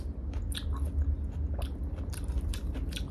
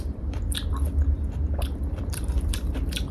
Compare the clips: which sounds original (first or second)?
first